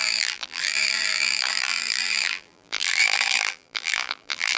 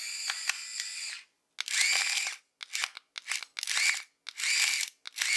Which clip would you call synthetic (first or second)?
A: first